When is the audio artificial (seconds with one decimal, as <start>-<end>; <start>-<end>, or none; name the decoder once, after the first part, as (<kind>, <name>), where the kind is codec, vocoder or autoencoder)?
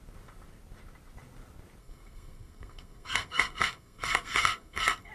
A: 1.8-5.1 (codec, SNAC)